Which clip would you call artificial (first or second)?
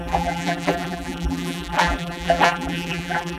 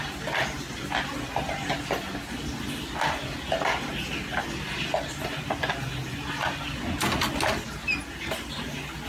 first